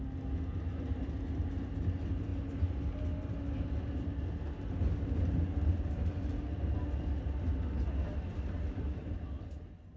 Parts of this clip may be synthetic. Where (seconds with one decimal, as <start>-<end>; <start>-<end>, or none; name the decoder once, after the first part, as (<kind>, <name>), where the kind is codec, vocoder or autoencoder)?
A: none